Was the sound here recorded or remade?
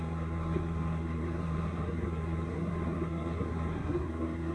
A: remade